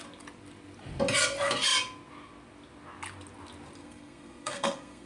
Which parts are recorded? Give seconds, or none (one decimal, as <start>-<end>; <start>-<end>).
0.0-3.8